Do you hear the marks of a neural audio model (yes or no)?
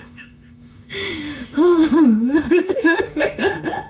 yes